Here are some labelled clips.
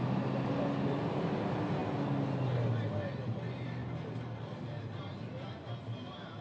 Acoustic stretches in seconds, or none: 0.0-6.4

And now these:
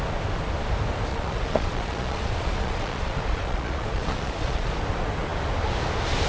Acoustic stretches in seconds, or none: 0.0-1.1; 4.7-6.3

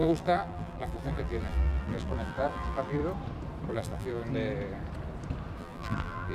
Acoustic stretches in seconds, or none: 3.0-3.7; 4.2-5.6

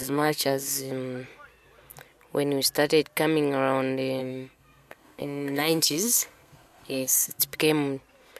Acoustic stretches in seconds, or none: 0.9-4.2; 7.4-8.4

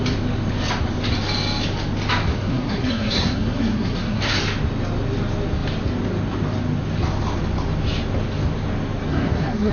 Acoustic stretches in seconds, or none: 0.0-2.3; 4.4-9.1

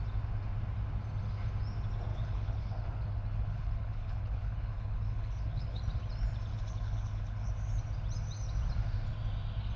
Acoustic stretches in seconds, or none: 0.0-2.1; 5.8-6.5; 7.5-9.8

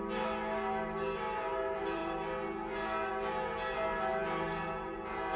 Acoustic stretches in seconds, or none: 0.0-5.4

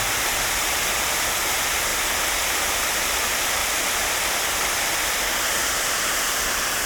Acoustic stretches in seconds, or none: none